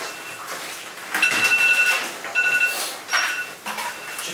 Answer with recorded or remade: recorded